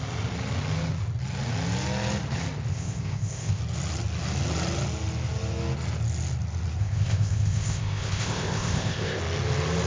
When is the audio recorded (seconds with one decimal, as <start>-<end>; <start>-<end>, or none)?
0.0-2.7; 3.6-6.8; 9.2-9.9